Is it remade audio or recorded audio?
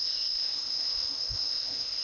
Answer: remade